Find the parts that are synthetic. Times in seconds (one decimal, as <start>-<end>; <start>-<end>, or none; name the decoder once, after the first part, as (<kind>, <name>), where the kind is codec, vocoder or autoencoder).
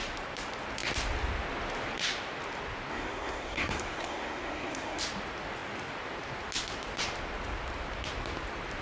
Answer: 2.9-5.0 (codec, SNAC)